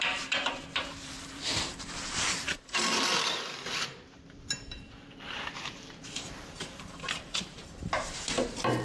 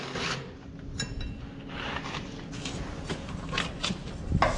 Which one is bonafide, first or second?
second